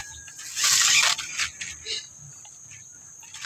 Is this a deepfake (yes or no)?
no